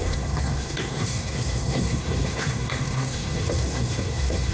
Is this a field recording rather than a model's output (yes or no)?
no